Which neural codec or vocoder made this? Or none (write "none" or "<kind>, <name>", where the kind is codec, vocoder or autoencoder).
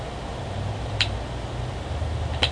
none